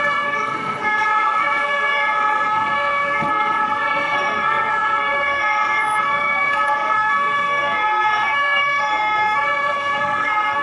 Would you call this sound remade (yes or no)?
yes